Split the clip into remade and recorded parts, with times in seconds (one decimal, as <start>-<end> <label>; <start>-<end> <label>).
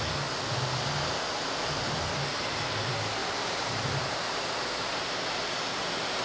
0.0-3.2 recorded; 3.2-5.1 remade; 5.1-6.2 recorded